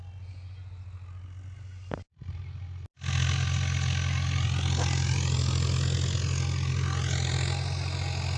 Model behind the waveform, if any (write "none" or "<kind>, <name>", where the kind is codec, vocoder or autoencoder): none